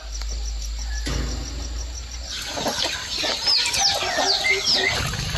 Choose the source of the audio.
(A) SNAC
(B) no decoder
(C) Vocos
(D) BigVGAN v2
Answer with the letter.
B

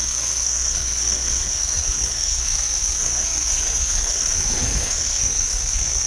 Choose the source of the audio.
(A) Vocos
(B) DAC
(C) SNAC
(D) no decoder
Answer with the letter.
C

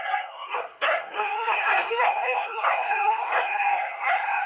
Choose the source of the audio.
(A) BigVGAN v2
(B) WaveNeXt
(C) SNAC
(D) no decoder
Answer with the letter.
C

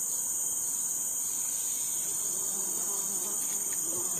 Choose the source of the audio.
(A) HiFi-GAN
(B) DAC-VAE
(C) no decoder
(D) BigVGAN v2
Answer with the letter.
C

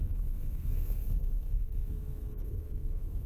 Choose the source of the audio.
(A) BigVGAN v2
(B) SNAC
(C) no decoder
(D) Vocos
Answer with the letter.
B